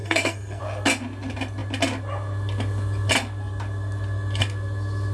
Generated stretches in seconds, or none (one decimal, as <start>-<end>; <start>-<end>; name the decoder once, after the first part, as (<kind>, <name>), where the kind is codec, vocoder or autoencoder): 0.0-0.6 (codec, SNAC)